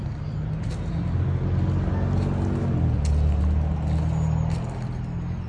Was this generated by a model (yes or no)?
no